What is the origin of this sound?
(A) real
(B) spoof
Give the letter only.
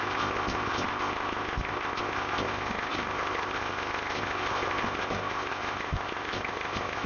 B